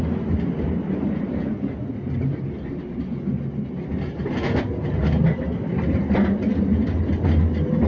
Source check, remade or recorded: recorded